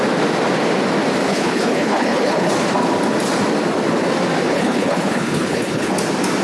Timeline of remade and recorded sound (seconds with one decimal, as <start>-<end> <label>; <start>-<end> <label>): 0.0-1.3 recorded; 1.3-2.5 remade; 2.5-4.5 recorded; 4.5-5.9 remade; 5.9-6.4 recorded